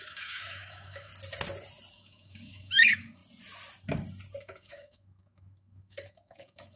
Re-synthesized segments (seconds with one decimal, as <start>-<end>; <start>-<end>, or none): 0.0-1.1; 1.9-3.2; 4.4-6.8